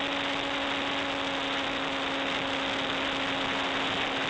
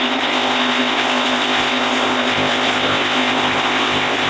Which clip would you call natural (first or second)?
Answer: first